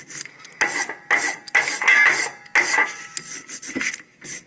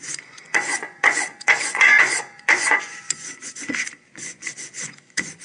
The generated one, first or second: second